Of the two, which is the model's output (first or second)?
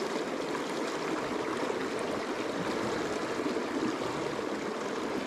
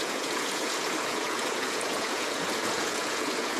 second